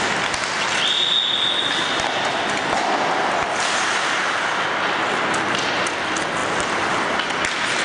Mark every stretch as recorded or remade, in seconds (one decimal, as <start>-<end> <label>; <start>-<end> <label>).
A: 0.0-7.8 recorded